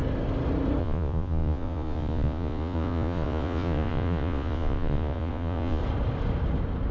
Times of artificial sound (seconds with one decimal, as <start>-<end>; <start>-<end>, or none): 0.8-5.8